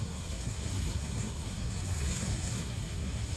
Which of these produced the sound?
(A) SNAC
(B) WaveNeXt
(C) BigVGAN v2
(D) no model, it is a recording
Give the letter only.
A